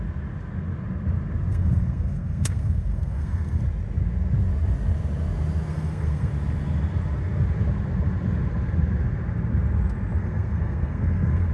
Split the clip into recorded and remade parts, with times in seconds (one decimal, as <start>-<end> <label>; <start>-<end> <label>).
0.0-1.5 recorded; 1.5-3.6 remade; 3.6-5.7 recorded; 5.7-6.3 remade; 6.3-10.2 recorded; 10.2-11.5 remade